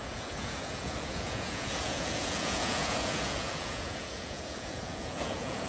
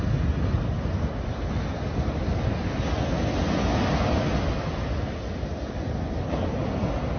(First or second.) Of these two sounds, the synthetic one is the first